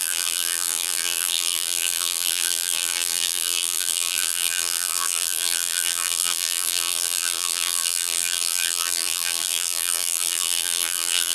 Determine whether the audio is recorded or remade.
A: remade